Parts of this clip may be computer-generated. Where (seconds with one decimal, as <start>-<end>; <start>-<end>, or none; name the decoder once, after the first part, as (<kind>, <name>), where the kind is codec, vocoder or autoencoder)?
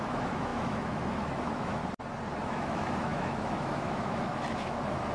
0.0-1.8 (autoencoder, DAC-VAE); 2.4-5.1